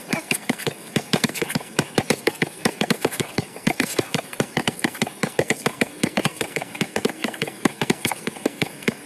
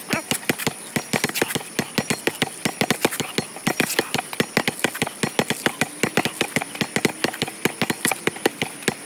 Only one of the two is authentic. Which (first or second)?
second